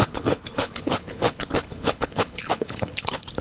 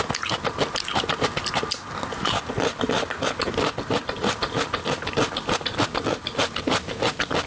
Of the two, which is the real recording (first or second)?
second